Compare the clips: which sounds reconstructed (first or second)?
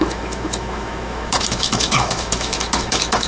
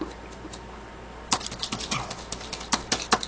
first